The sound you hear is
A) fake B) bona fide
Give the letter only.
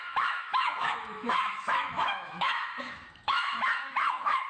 A